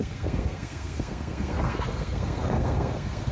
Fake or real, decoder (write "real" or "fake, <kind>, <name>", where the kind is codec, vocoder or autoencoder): fake, codec, SNAC